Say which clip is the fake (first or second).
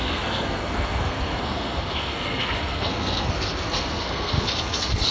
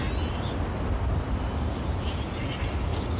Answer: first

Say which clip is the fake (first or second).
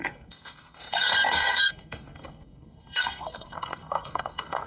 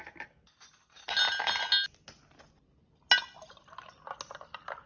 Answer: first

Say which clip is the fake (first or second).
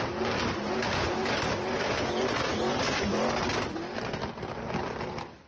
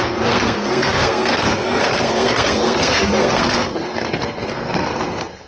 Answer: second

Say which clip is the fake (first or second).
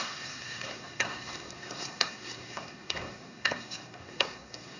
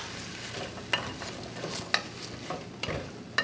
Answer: first